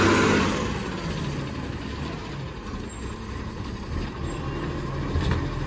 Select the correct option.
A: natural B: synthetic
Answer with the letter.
A